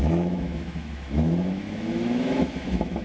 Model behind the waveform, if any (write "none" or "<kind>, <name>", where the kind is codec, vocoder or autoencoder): autoencoder, DAC-VAE